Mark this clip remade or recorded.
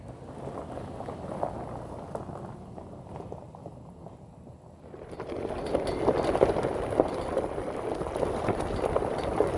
recorded